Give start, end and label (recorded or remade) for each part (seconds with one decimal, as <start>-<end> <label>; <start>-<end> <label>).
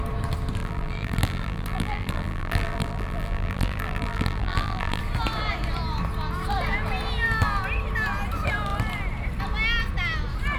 0.0-0.6 recorded; 0.6-5.0 remade; 5.0-10.6 recorded